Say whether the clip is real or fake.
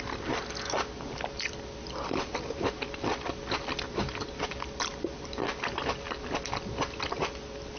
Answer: real